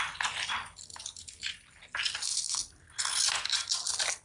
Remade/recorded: recorded